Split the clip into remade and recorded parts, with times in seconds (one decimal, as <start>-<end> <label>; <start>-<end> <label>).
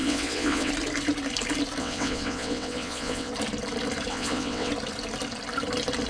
0.0-0.7 remade; 0.7-1.8 recorded; 1.8-3.3 remade; 3.3-4.1 recorded; 4.1-4.7 remade; 4.7-6.1 recorded